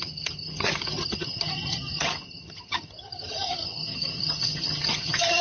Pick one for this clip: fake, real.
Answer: fake